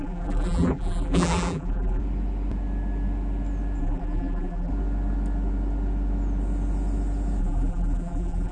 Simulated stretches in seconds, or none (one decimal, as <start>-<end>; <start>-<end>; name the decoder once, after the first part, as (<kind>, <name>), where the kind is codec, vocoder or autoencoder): 0.0-2.0 (vocoder, BigVGAN v2); 3.8-4.7; 7.4-8.5